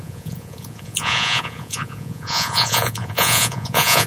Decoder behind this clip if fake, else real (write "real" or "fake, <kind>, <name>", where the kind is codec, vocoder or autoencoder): fake, vocoder, Vocos